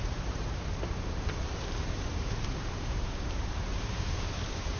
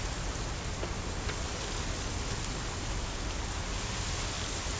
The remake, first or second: first